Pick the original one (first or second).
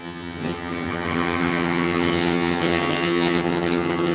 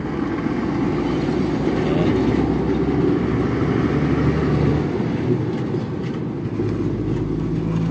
second